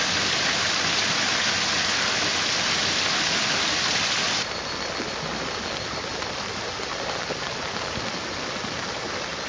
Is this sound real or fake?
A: real